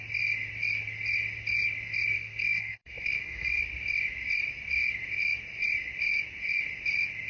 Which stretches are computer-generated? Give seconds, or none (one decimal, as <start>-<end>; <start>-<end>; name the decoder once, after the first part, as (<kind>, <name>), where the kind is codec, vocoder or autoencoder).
2.1-3.6 (codec, SNAC)